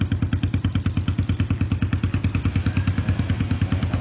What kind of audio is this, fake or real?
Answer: real